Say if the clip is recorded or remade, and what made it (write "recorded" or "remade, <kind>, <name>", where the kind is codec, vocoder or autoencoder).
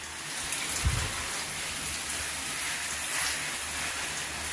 recorded